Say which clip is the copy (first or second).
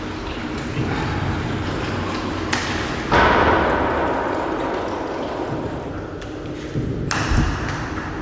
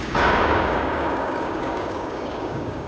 second